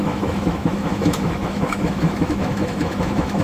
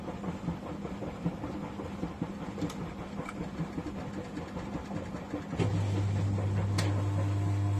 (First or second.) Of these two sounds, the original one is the second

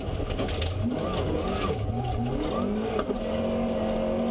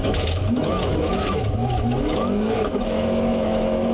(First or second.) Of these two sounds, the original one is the first